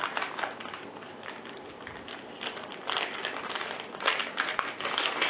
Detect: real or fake real